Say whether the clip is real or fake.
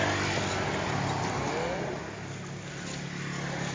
real